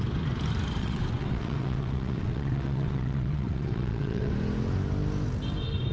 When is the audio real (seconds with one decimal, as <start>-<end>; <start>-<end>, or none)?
0.0-0.8; 4.3-5.9

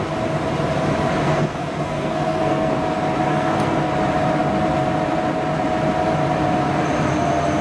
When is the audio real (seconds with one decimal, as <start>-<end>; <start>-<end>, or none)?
0.0-1.2; 2.7-3.3; 3.9-7.6

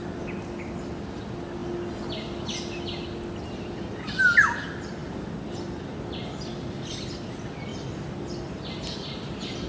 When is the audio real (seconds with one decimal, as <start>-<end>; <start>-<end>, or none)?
0.0-5.0; 6.9-7.7; 8.5-9.7

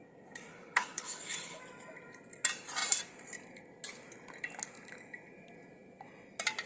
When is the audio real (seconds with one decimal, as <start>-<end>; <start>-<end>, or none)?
0.0-0.5; 1.6-6.7

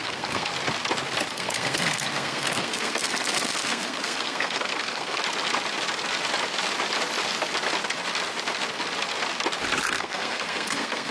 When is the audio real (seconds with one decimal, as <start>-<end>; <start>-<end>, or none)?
0.5-1.3; 5.2-9.8

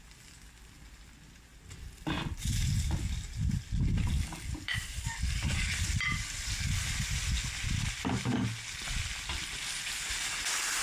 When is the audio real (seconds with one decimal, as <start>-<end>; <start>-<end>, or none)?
0.0-10.8